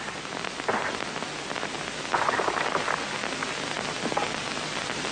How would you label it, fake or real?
real